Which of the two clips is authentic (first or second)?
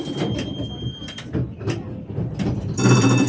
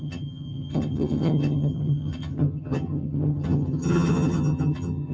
first